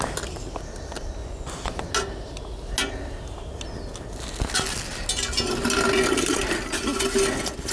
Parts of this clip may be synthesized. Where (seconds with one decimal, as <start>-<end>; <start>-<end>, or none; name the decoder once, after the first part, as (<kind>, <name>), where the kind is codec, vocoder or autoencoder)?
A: 1.2-1.9 (vocoder, Vocos)